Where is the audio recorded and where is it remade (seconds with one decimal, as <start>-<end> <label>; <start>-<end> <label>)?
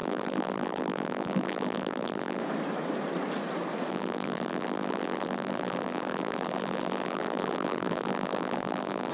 0.0-2.4 remade; 2.4-3.9 recorded; 3.9-9.1 remade